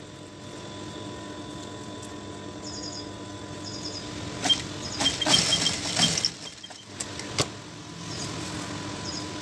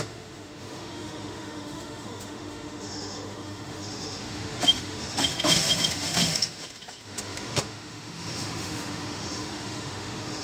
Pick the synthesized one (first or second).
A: second